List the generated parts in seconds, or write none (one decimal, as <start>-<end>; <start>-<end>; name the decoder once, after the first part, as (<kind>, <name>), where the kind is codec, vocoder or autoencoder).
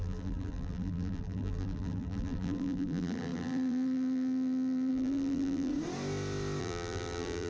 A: 0.0-5.7 (vocoder, BigVGAN v2); 6.6-7.5